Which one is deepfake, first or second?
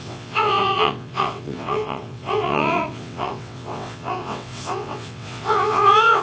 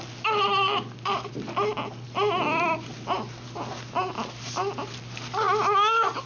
first